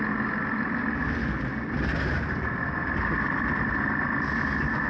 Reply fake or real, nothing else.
real